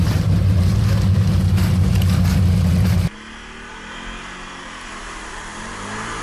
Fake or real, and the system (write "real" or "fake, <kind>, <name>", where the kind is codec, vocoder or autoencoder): real